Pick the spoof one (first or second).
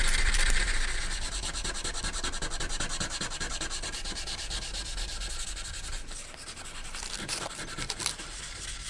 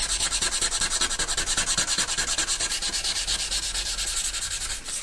first